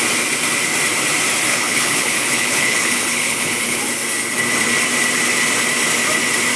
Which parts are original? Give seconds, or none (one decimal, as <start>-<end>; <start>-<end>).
0.0-1.5; 3.8-6.6